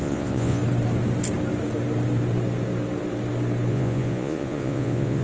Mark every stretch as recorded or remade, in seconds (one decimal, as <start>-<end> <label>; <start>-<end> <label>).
0.0-0.6 remade; 0.6-3.7 recorded; 3.7-5.2 remade